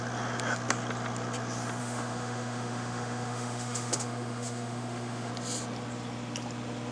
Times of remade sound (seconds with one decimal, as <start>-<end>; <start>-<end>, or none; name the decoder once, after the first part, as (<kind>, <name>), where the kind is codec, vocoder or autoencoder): 1.8-5.3 (autoencoder, DAC-VAE)

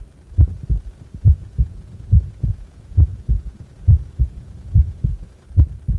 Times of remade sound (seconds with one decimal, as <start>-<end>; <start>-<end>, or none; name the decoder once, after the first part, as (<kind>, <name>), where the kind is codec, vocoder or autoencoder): 1.4-5.0 (vocoder, Vocos)

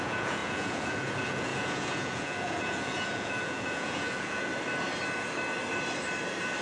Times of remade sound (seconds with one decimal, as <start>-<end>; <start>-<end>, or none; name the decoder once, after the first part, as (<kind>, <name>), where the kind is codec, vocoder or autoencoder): 0.0-4.5 (vocoder, Vocos)

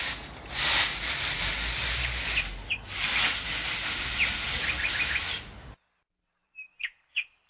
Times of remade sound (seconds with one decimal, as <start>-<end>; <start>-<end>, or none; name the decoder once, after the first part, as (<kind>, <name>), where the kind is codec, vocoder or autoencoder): 2.7-3.1 (vocoder, BigVGAN v2); 6.0-7.5

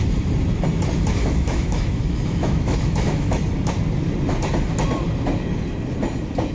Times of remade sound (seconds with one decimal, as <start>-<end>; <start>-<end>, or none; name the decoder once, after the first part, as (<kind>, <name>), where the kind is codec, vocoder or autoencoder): 1.2-3.4 (autoencoder, DAC-VAE)

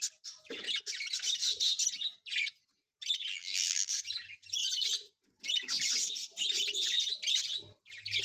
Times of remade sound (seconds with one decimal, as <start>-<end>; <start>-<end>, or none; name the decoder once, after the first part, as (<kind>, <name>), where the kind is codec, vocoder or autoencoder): 3.3-3.9 (vocoder, BigVGAN v2)

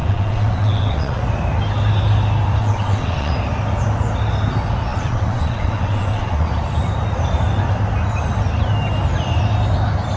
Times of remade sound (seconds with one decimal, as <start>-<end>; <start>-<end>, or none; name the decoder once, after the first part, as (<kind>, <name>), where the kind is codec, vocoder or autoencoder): 0.0-1.2 (vocoder, WaveNeXt); 2.6-3.3; 4.9-6.5

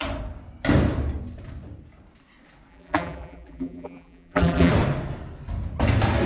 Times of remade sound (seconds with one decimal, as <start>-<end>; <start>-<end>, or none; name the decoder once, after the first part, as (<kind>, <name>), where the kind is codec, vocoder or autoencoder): 2.7-4.7 (vocoder, BigVGAN v2)